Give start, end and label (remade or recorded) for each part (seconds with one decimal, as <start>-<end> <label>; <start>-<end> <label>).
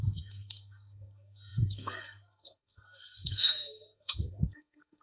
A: 0.0-5.0 remade